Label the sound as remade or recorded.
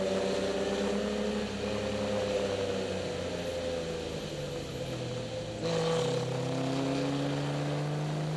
recorded